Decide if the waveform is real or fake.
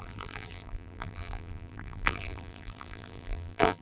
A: fake